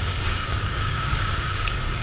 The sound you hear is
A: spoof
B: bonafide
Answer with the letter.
A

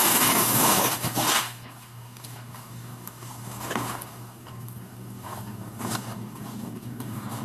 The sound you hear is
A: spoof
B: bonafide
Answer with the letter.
A